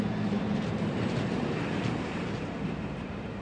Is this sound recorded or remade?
remade